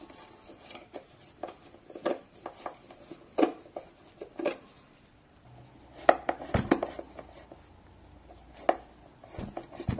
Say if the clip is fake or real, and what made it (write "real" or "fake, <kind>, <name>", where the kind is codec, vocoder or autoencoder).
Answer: real